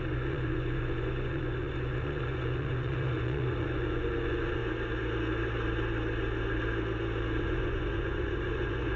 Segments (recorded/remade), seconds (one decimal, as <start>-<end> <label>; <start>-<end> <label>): 0.0-4.6 remade; 4.6-7.4 recorded; 7.4-9.0 remade